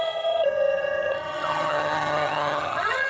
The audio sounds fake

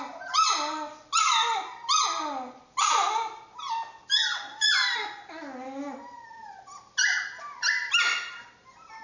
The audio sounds real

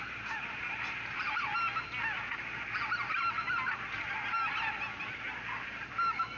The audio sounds real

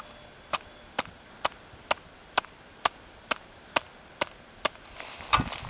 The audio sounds real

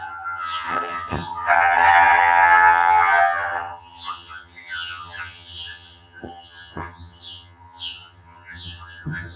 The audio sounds fake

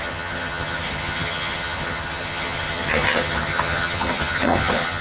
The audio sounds fake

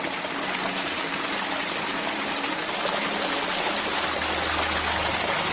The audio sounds real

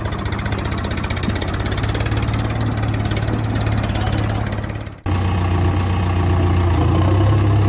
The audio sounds real